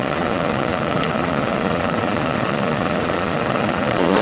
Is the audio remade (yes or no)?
yes